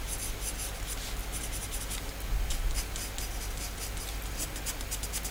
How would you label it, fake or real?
real